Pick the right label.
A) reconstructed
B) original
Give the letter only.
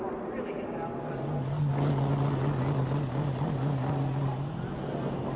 B